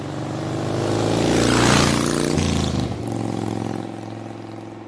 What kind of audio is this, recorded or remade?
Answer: recorded